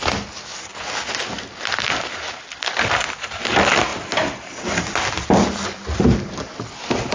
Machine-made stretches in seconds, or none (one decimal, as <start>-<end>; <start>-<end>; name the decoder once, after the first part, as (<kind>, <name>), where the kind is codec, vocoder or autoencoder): none